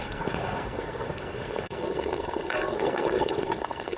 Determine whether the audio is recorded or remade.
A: remade